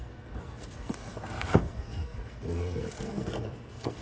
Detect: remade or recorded remade